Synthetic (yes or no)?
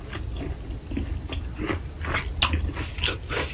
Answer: no